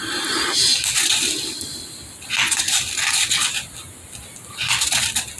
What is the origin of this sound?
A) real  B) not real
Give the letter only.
A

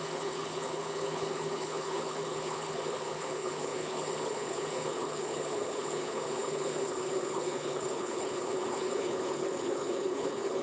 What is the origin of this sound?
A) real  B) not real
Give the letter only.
B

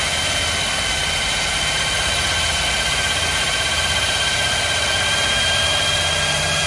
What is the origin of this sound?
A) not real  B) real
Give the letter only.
B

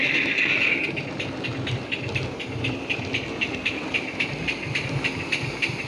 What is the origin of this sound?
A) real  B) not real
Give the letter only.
A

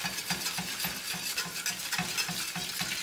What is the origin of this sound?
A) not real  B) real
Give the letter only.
B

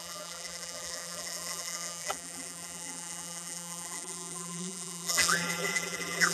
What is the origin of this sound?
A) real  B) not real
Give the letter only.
B